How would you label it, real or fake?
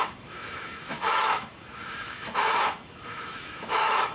fake